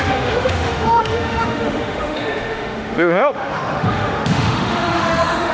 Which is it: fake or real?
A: fake